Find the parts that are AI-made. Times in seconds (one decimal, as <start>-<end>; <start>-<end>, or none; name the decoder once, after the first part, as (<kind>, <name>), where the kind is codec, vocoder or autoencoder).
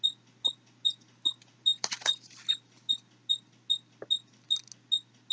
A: none